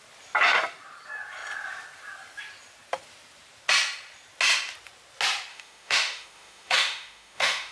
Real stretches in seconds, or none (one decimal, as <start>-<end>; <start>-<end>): 0.0-5.5